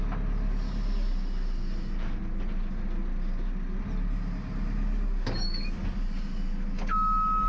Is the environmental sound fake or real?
real